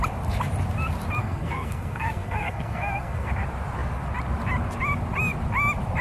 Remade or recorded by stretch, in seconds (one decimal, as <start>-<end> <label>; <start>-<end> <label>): 0.0-1.2 recorded; 1.2-3.3 remade; 3.3-6.0 recorded